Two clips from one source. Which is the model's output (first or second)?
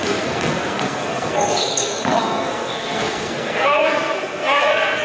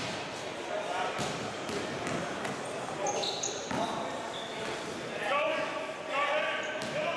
first